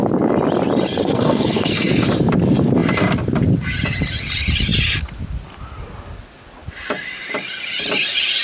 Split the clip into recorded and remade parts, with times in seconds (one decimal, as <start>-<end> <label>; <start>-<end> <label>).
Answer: 0.0-1.0 recorded; 1.0-1.9 remade; 1.9-8.4 recorded